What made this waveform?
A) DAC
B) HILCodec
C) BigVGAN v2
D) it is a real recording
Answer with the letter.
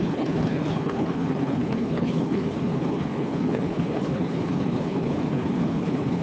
B